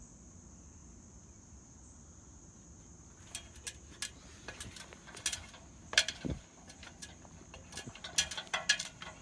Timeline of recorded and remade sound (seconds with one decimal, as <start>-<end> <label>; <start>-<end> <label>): 0.0-9.2 recorded